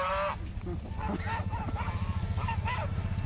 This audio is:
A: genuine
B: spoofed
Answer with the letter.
A